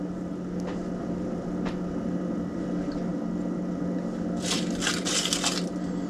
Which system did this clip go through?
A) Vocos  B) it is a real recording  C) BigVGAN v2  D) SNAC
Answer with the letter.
B